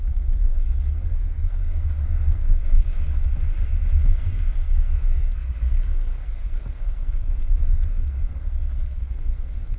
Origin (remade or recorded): remade